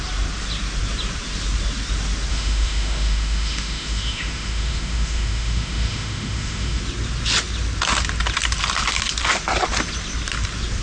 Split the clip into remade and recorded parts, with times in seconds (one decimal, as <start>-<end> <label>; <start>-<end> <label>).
0.0-2.3 recorded; 2.3-6.8 remade; 6.8-10.8 recorded